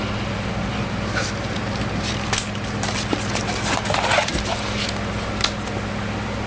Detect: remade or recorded recorded